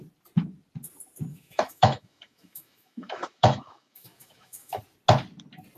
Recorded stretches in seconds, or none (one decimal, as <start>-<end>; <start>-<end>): 0.0-1.3; 4.8-5.8